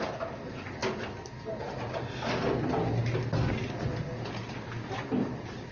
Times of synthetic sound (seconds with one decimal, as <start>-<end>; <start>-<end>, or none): none